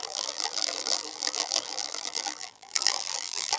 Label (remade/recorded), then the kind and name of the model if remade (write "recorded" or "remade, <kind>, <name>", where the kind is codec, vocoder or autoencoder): remade, vocoder, BigVGAN v2